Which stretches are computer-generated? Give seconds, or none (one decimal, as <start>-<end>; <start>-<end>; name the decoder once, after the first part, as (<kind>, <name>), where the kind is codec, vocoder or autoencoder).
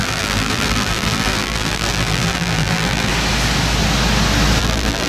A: 0.0-3.1 (vocoder, BigVGAN v2); 4.6-5.1